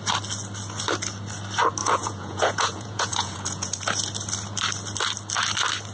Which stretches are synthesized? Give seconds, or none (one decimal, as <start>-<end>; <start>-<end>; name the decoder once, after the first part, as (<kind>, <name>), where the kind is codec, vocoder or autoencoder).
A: 1.8-3.8 (vocoder, Vocos)